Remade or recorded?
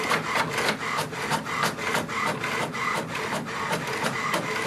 recorded